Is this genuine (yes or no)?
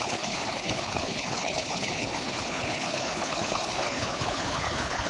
no